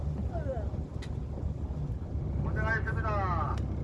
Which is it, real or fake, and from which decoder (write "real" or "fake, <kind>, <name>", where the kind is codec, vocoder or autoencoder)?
real